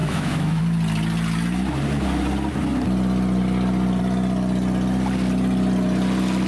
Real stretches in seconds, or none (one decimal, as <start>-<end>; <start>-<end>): 0.6-6.5

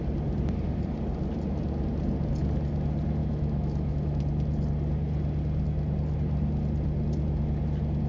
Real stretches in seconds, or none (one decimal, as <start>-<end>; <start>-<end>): 0.0-3.2; 4.2-8.1

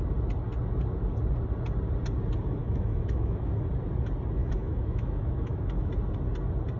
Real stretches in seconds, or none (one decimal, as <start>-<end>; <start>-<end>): 0.0-2.6; 3.7-4.4; 5.9-6.8

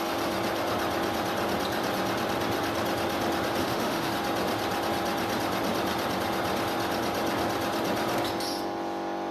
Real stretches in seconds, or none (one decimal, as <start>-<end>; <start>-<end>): 0.0-3.6; 4.1-9.3

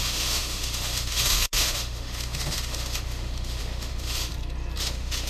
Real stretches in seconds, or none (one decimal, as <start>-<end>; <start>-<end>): 4.3-4.8